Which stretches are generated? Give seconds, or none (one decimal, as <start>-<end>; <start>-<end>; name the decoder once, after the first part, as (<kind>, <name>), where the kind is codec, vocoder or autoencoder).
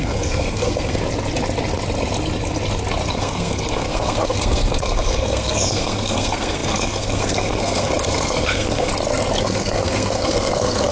0.0-1.0 (codec, SNAC); 3.1-8.9; 9.4-10.9